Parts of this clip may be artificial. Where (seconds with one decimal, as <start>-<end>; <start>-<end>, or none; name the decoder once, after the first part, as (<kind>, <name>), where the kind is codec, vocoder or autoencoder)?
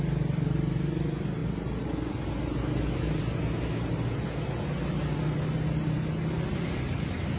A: none